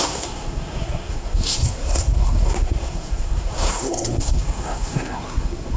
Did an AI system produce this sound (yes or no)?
yes